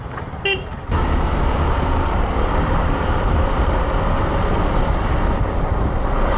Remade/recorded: remade